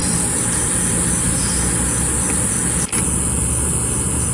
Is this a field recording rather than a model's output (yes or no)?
yes